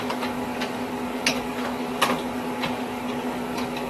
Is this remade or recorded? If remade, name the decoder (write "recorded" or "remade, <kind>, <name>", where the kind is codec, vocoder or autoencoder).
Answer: remade, codec, DAC